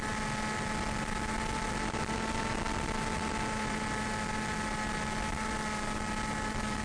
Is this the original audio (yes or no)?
yes